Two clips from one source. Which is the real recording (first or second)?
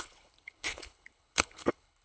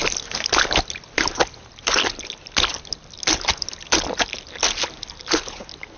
second